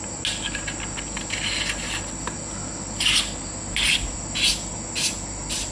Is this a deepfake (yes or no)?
no